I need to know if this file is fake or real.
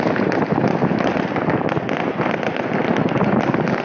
real